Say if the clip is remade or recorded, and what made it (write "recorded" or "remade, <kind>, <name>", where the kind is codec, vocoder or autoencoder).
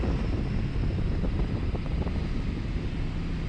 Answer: recorded